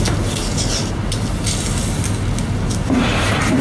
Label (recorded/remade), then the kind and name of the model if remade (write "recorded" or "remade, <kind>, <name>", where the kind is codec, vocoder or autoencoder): recorded